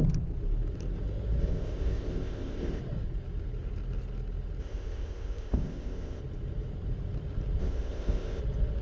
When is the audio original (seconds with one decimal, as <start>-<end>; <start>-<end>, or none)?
0.0-1.4; 2.8-4.6; 6.2-7.6; 8.4-8.8